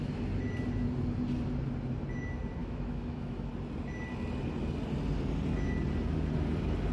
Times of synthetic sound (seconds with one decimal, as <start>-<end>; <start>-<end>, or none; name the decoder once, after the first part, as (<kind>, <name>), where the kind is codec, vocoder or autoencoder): 2.6-3.5 (autoencoder, DAC-VAE)